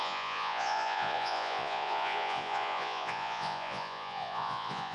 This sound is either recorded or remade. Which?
remade